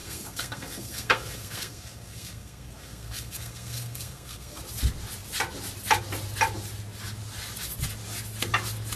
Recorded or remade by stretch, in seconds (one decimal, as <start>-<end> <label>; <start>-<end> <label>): 0.0-4.6 remade; 4.6-9.0 recorded